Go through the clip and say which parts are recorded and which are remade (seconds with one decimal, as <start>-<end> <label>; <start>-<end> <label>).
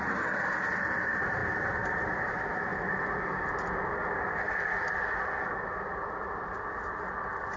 0.0-2.7 remade; 2.7-7.6 recorded